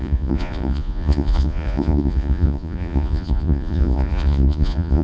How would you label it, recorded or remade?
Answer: remade